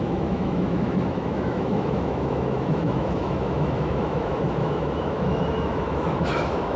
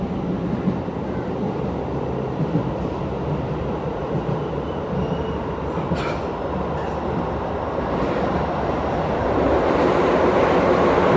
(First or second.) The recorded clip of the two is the second